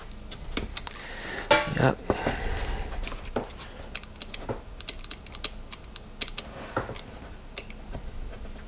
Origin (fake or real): real